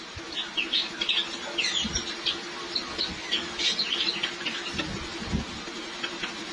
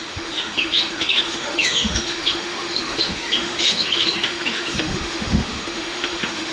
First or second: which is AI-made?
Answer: second